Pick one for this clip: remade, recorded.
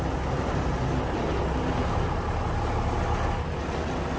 recorded